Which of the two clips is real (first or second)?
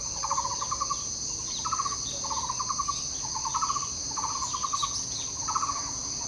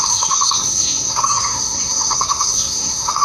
first